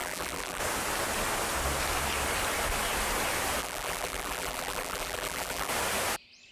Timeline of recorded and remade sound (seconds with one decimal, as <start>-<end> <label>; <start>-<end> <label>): 0.0-0.6 remade; 0.6-3.6 recorded; 3.6-5.7 remade; 5.7-6.5 recorded